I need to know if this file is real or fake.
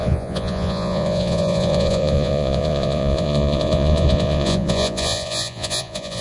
fake